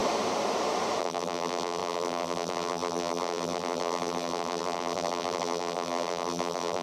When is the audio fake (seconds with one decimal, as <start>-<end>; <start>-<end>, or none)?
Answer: 1.0-6.8